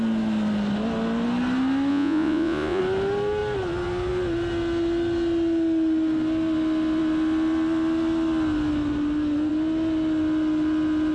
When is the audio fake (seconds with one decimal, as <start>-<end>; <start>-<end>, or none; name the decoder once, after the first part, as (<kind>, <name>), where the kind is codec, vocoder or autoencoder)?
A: 1.9-2.8 (vocoder, Vocos)